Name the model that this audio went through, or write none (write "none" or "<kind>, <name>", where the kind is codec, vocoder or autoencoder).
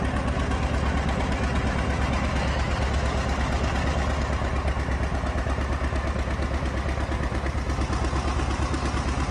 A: none